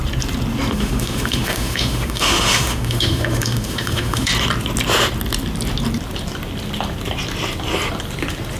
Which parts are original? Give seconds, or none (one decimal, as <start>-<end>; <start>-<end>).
0.0-0.7; 4.3-8.6